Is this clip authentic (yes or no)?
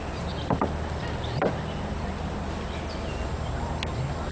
yes